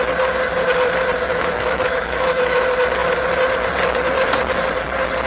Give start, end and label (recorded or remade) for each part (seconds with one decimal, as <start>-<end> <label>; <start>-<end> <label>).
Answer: 0.0-1.3 recorded; 1.3-2.6 remade; 2.6-5.3 recorded